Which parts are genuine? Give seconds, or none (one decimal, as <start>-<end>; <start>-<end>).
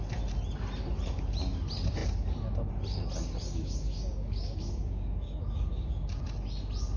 0.0-3.4; 6.2-7.0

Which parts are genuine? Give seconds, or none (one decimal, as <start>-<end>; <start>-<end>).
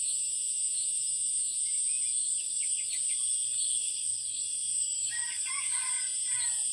0.0-2.2; 2.9-3.7; 5.9-6.7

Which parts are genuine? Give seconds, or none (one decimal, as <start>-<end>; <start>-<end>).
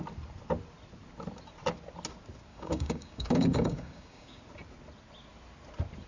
0.0-2.5; 4.4-6.1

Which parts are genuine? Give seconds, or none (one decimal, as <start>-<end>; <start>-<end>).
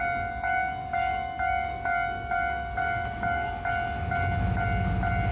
0.0-0.8; 3.5-5.3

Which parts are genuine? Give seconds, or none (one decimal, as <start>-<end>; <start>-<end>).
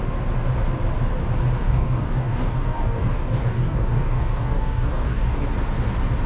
0.0-1.6; 5.4-6.3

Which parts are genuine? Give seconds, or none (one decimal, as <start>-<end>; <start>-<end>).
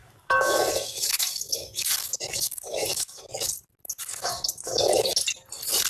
3.5-4.0; 5.1-5.9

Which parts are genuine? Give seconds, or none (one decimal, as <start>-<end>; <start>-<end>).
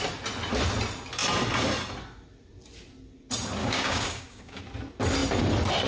0.0-3.6; 4.6-5.9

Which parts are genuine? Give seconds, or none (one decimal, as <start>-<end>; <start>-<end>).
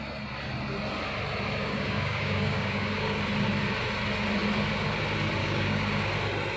0.0-1.6; 3.2-5.4; 6.1-6.6